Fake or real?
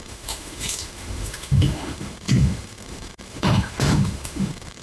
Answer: fake